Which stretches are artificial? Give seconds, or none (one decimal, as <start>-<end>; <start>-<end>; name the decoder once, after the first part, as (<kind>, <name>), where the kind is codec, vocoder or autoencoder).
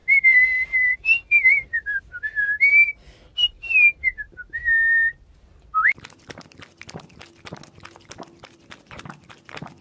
0.0-2.0 (vocoder, BigVGAN v2)